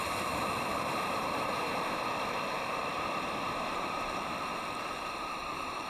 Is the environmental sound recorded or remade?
remade